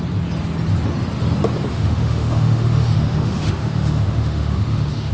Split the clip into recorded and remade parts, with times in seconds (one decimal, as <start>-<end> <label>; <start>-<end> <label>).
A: 0.0-1.7 recorded; 1.7-5.1 remade